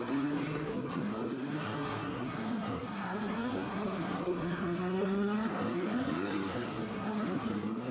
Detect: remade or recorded remade